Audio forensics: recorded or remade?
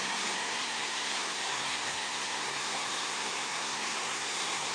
remade